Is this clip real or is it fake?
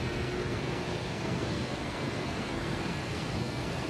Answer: fake